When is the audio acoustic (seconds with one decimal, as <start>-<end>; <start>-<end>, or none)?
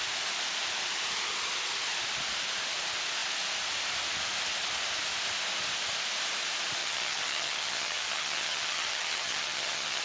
0.0-6.8